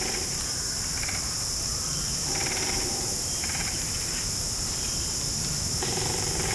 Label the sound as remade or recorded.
remade